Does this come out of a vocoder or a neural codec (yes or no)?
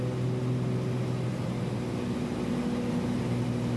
no